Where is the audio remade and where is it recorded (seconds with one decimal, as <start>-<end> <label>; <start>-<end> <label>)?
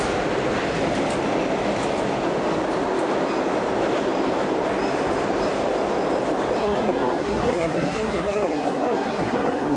0.0-6.6 recorded; 6.6-9.8 remade